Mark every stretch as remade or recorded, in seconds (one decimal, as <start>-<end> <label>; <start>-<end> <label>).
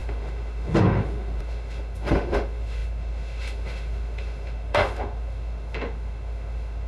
0.0-6.9 remade